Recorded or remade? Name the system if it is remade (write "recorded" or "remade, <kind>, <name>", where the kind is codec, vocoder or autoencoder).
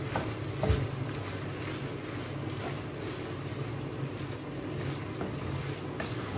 recorded